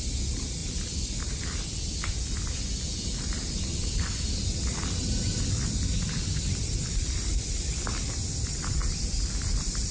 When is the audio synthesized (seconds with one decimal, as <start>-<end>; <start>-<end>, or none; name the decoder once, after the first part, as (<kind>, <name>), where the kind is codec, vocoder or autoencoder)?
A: none